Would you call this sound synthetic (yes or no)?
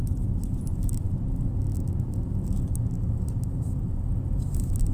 no